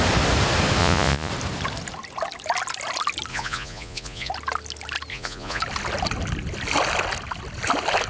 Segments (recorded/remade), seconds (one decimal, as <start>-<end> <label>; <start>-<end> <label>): 0.0-0.8 recorded; 0.8-1.3 remade; 1.3-3.3 recorded; 3.3-4.3 remade; 4.3-5.1 recorded; 5.1-5.6 remade; 5.6-8.1 recorded